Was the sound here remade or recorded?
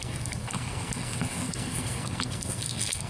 remade